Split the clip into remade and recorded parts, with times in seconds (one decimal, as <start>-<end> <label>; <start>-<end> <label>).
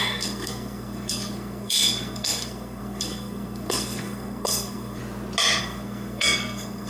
0.0-5.0 remade; 5.0-5.6 recorded; 5.6-6.9 remade